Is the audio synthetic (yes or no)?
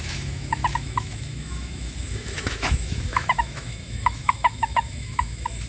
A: yes